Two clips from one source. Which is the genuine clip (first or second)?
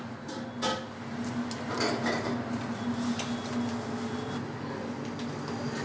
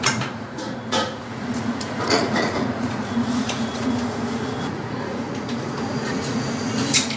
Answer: first